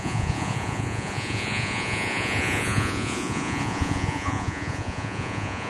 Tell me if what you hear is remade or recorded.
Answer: remade